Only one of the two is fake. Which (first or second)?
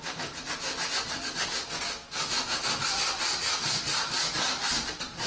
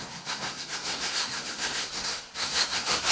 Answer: second